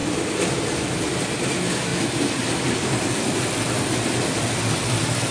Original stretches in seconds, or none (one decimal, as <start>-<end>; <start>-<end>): 1.1-1.9; 3.4-5.3